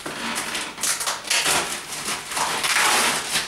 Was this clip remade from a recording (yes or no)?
no